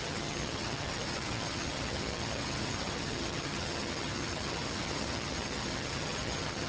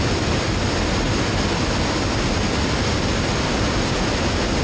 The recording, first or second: second